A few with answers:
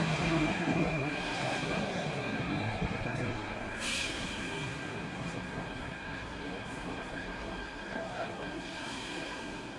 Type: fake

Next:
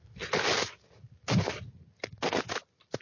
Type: real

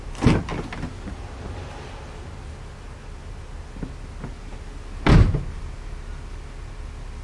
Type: real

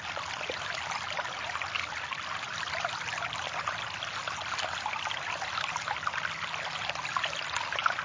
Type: real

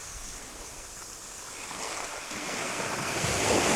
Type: fake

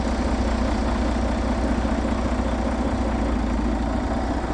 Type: real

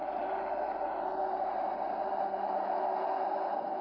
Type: real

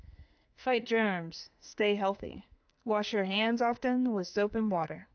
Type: fake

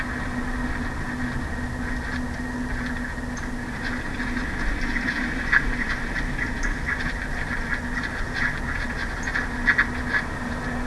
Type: real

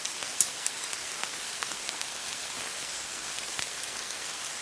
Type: fake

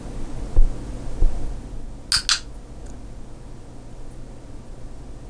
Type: real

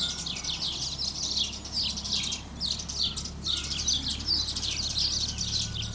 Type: real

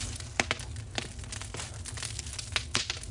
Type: real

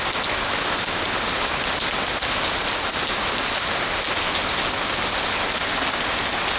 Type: real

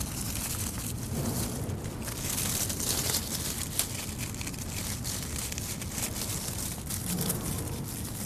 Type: real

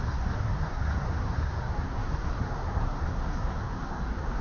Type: fake